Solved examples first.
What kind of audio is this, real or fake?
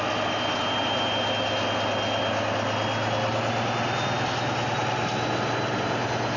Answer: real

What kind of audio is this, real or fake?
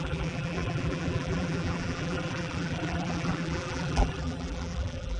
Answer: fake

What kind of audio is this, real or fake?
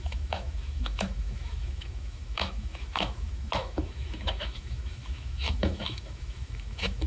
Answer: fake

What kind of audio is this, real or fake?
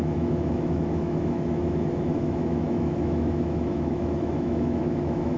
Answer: fake